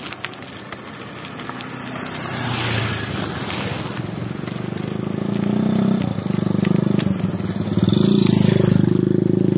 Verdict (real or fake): real